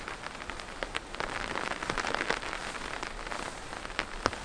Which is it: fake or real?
real